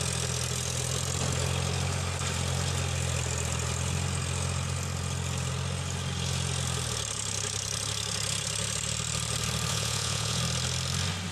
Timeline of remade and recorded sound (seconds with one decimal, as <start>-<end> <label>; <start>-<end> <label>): 0.0-9.7 recorded; 9.7-10.4 remade; 10.4-11.3 recorded